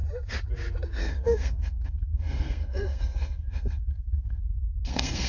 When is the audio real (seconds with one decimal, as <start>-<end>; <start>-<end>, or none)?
0.0-1.0